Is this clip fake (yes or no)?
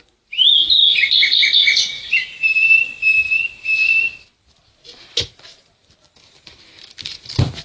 no